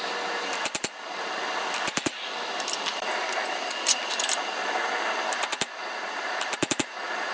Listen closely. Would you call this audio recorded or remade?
remade